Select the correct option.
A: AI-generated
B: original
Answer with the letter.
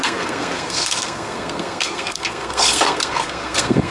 A